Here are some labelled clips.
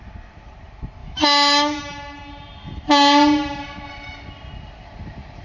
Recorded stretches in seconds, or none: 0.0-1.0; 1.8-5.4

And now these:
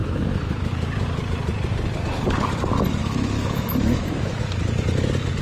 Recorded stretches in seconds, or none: 0.8-3.0; 4.4-5.4

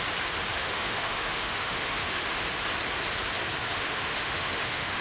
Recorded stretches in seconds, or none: 0.0-0.5; 2.4-3.7

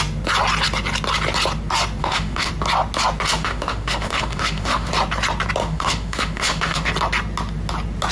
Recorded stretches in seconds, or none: 0.0-2.0; 2.5-3.3; 4.9-5.6; 6.9-8.1

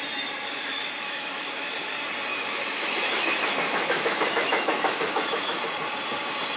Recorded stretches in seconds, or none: 0.0-0.7; 1.9-2.3; 5.6-6.6

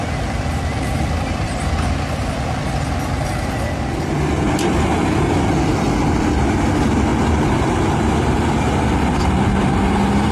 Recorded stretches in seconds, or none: 0.0-10.3

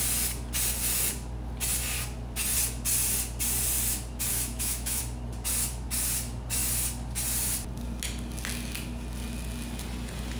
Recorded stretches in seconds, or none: 0.0-4.3; 5.0-10.4

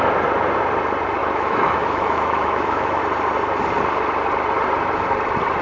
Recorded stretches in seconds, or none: 0.0-1.2; 3.0-5.6